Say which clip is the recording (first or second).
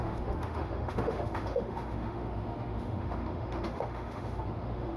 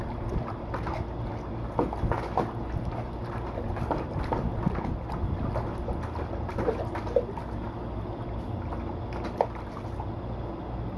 second